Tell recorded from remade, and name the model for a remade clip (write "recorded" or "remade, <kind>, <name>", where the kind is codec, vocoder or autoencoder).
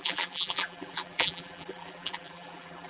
remade, vocoder, BigVGAN v2